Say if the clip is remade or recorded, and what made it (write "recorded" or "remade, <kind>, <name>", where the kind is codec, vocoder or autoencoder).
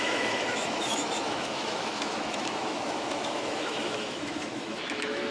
remade, autoencoder, DAC-VAE